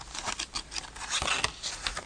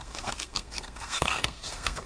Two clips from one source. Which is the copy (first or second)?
second